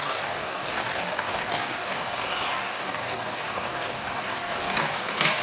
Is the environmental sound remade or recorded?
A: remade